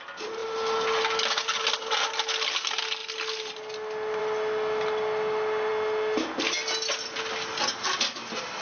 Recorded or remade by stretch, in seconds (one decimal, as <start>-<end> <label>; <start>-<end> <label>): 0.0-8.6 recorded